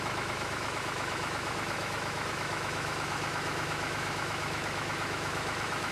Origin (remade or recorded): remade